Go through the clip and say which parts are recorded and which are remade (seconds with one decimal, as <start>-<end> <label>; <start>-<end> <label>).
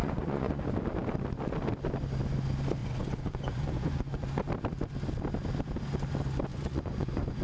0.0-0.6 remade; 0.6-2.8 recorded; 2.8-4.3 remade; 4.3-6.5 recorded; 6.5-7.4 remade